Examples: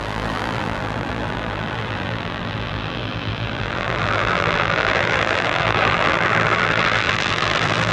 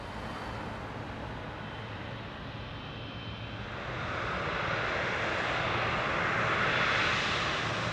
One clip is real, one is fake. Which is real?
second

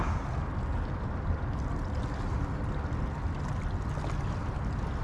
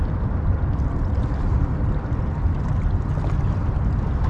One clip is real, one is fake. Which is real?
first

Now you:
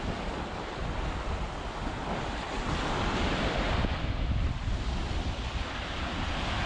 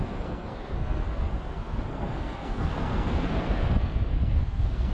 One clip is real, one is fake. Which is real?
first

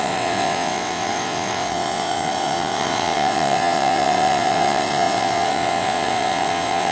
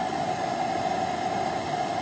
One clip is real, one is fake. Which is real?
second